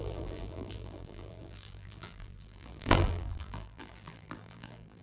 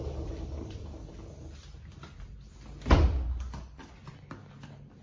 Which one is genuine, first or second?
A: second